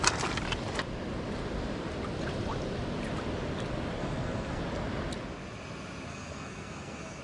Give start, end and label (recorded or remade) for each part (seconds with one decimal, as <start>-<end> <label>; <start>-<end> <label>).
0.0-4.0 recorded; 4.0-4.6 remade; 4.6-6.1 recorded; 6.1-7.2 remade